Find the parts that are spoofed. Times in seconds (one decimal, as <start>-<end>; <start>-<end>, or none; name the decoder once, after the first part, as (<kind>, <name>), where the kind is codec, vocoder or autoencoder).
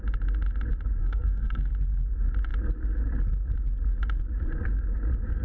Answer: 1.0-1.7 (codec, SNAC)